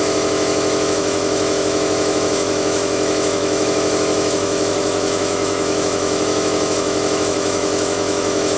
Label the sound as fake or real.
fake